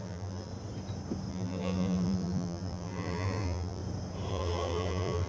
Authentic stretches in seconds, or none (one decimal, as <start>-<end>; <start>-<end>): 0.5-1.3; 3.8-4.3